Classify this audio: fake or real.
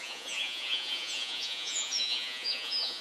fake